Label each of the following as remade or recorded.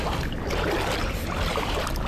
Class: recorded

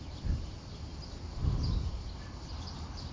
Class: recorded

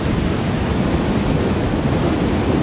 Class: recorded